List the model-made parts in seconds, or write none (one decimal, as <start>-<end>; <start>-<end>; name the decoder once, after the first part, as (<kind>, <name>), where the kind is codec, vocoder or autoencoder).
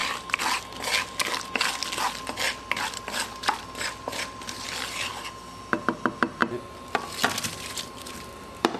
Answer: 1.3-1.8 (vocoder, BigVGAN v2); 3.9-5.1; 5.8-6.4; 7.5-8.8